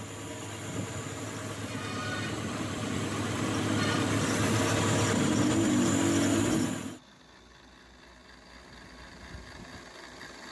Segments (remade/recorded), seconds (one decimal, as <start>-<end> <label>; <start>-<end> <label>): 0.0-2.0 recorded; 2.0-3.4 remade; 3.4-10.5 recorded